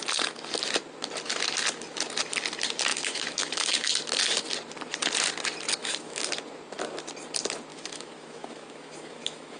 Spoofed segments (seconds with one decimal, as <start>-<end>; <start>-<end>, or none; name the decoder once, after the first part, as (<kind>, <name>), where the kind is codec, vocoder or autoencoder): 2.9-3.9 (autoencoder, DAC-VAE); 5.8-6.3; 7.7-9.6